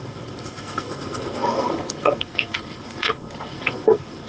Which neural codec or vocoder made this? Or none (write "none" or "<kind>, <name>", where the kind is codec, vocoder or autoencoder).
codec, SNAC